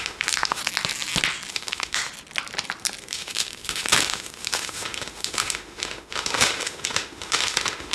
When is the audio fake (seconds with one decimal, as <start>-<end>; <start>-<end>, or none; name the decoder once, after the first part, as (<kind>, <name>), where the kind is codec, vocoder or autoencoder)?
0.0-0.6 (autoencoder, DAC-VAE); 1.5-2.0; 3.0-7.9